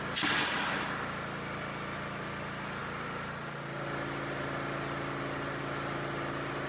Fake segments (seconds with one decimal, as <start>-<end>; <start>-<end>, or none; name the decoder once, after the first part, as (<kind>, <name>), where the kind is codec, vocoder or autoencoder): none